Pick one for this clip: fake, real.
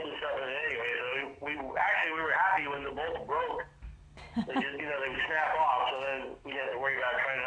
fake